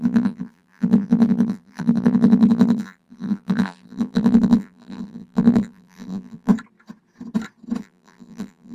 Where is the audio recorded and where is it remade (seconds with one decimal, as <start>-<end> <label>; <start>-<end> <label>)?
0.0-6.5 remade; 6.5-7.8 recorded; 7.8-8.7 remade